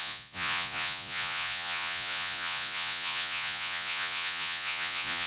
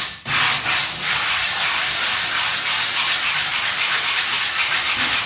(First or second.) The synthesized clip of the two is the first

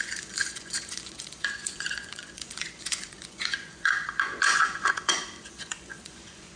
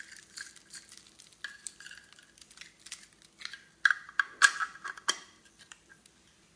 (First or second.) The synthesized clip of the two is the first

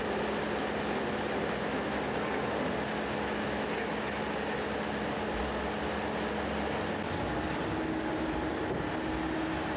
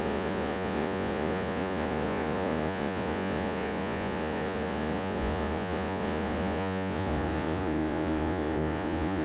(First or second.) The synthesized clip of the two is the second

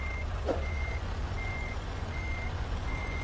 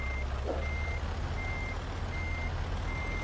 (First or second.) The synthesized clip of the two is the first